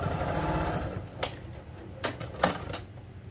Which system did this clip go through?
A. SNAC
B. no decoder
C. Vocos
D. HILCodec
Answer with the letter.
B